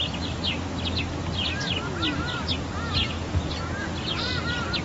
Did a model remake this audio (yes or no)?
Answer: no